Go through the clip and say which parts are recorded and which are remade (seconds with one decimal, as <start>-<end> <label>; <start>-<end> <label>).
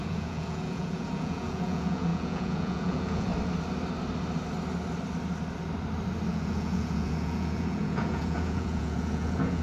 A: 0.0-3.3 remade; 3.3-6.3 recorded; 6.3-9.6 remade